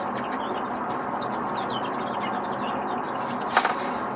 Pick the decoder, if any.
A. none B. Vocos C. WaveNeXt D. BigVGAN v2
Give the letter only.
A